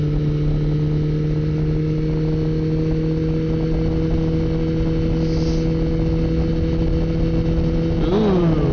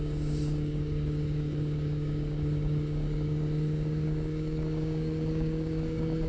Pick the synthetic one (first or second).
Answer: second